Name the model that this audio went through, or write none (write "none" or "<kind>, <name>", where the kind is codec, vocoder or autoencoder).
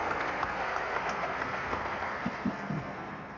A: codec, SNAC